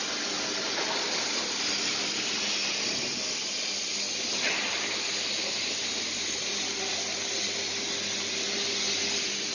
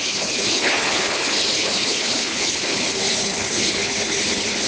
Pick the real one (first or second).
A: first